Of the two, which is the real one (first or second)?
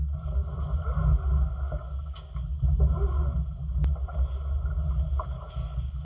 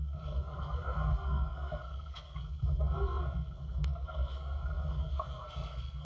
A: first